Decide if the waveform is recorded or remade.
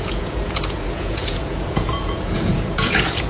remade